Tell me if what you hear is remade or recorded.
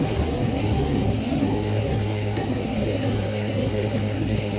remade